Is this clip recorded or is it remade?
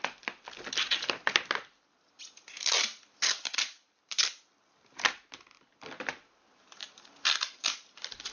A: remade